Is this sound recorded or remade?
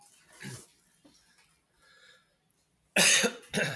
recorded